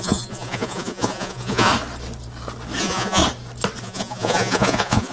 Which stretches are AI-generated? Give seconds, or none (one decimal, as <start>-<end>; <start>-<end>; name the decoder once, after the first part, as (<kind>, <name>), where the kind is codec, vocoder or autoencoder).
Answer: 0.0-1.7 (vocoder, Vocos); 2.8-3.2; 3.8-5.1